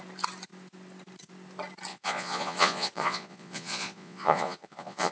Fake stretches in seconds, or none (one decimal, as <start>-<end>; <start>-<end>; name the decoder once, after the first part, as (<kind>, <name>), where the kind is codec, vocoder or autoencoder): 1.9-5.1 (vocoder, Vocos)